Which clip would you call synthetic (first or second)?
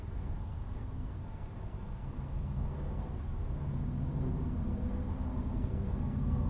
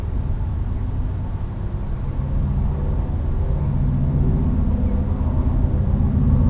first